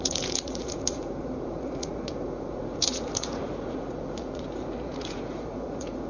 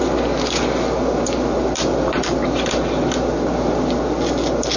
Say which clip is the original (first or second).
second